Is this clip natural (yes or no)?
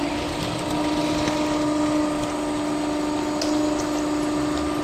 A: yes